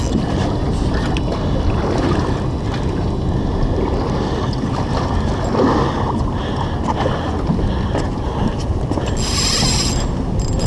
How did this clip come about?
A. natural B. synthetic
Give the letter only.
A